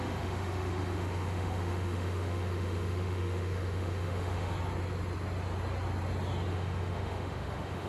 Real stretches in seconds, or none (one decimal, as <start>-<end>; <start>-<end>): 4.5-6.5